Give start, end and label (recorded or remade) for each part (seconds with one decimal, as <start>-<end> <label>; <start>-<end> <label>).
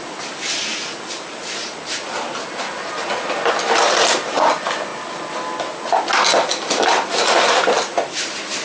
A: 0.0-8.6 recorded